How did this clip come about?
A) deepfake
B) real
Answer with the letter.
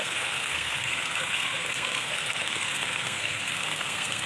A